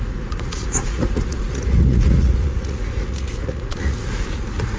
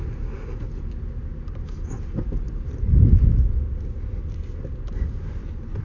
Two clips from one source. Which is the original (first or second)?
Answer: second